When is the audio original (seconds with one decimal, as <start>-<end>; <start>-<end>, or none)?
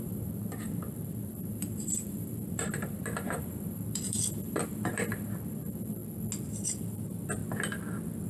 6.0-6.5; 7.4-8.3